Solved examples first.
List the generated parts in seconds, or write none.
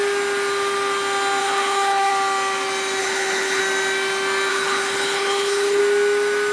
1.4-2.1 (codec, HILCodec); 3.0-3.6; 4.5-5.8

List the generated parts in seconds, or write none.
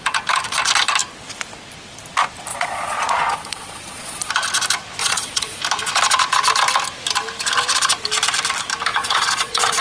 2.5-4.3 (vocoder, Vocos); 5.0-5.6; 8.9-9.8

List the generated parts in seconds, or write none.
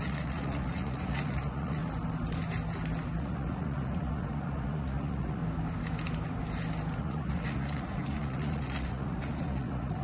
0.0-1.8 (vocoder, Vocos); 3.2-5.4; 7.0-10.0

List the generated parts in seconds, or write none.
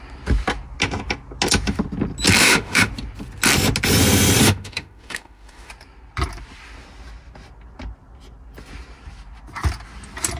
2.4-2.9 (autoencoder, DAC-VAE); 4.4-5.7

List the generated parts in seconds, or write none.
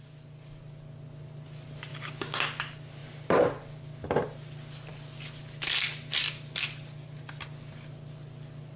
1.9-2.4 (codec, DAC)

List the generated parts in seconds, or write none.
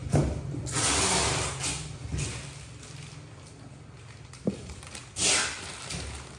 none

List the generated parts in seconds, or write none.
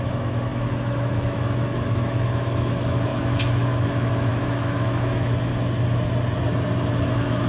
0.0-5.5 (autoencoder, DAC-VAE); 7.0-7.5